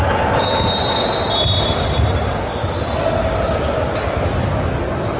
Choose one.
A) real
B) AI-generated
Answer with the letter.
A